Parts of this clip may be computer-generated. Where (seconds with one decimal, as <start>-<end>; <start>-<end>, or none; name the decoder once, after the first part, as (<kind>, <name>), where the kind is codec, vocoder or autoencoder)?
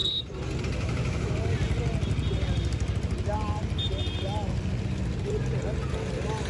none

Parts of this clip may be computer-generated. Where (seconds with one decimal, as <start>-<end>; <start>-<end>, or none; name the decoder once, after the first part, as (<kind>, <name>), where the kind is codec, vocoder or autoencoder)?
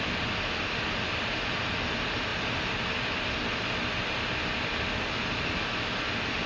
none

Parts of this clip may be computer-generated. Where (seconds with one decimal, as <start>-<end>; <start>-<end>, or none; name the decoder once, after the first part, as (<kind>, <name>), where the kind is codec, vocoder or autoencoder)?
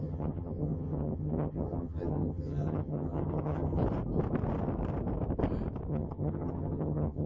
0.0-3.8 (vocoder, HiFi-GAN); 5.9-7.3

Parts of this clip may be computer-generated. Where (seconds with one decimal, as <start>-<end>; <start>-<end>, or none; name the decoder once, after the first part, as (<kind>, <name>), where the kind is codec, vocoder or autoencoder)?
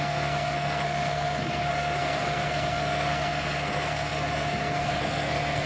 0.0-5.7 (codec, SNAC)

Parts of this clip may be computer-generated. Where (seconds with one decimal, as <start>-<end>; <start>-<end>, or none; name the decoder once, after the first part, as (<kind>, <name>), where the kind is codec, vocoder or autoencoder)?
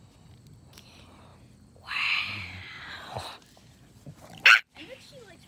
none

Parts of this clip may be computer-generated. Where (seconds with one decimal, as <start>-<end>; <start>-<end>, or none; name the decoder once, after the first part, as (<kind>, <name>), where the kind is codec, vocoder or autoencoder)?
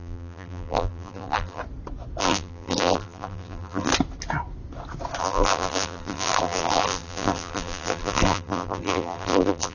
0.0-1.6 (vocoder, BigVGAN v2); 2.2-3.9; 5.2-9.7